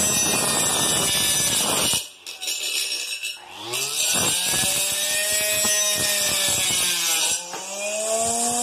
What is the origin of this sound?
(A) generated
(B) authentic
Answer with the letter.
B